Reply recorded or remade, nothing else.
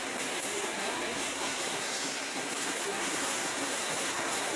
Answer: remade